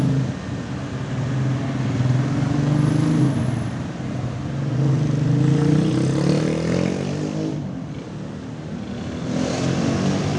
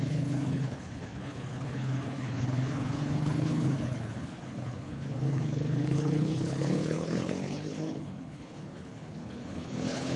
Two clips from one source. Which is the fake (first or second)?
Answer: second